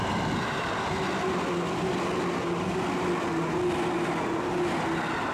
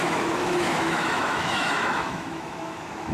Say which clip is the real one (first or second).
first